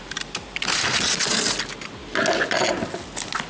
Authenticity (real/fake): real